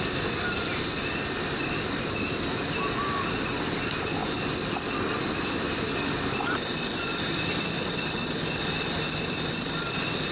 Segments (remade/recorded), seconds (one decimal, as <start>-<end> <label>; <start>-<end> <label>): 0.0-10.3 recorded

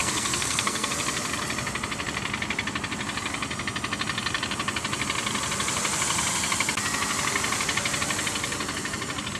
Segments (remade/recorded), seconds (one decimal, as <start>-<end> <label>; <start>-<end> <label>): 0.0-0.9 remade; 0.9-9.4 recorded

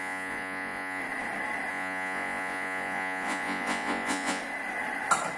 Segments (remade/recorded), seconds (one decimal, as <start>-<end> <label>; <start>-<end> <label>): 0.0-1.0 remade; 1.0-1.7 recorded; 1.7-4.4 remade; 4.4-5.4 recorded

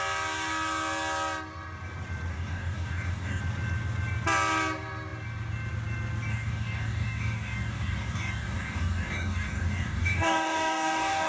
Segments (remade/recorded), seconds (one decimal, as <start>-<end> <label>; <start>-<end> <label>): 0.0-2.3 recorded; 2.3-3.4 remade; 3.4-6.3 recorded; 6.3-11.3 remade

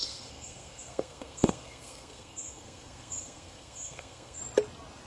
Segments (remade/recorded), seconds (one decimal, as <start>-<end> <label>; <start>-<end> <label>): 0.0-4.4 remade; 4.4-5.1 recorded

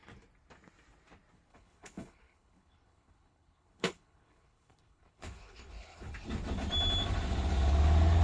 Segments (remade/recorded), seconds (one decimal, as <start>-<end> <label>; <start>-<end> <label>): 0.0-1.5 recorded; 1.5-6.1 remade; 6.1-8.2 recorded